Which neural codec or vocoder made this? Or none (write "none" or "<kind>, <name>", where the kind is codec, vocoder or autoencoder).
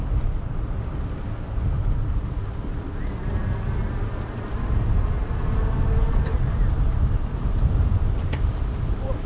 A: none